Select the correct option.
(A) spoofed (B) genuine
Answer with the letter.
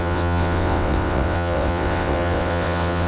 A